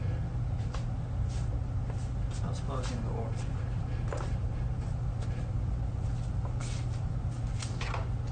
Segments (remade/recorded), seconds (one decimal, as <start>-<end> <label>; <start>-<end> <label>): 0.0-8.3 recorded